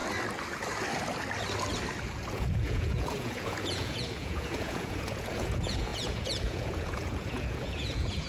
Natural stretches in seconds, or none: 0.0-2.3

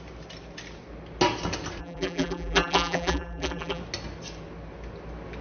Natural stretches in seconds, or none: 0.0-1.8; 3.8-5.4

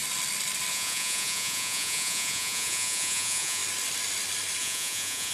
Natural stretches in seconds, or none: 0.0-0.7; 3.6-4.6

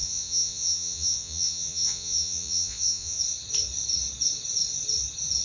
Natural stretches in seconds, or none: 3.2-5.4

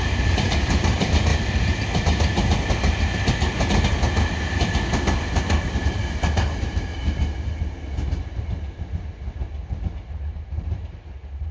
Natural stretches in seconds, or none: 1.3-5.8; 6.9-10.0